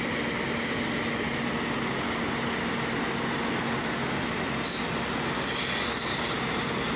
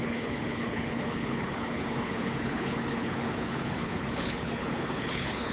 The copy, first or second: second